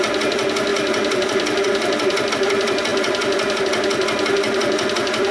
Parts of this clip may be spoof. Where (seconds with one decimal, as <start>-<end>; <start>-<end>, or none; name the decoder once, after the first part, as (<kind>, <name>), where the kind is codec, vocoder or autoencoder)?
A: none